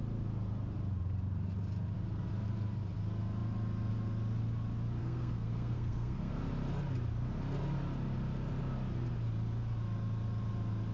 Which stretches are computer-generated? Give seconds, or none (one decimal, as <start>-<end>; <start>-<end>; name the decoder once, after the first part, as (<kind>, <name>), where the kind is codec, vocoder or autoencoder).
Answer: 5.0-6.3 (codec, SNAC)